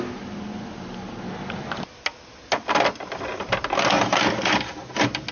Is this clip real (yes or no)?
yes